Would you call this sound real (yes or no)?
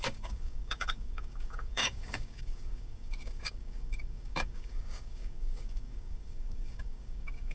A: no